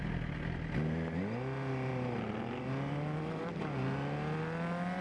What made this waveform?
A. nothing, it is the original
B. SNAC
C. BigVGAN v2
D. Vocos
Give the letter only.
A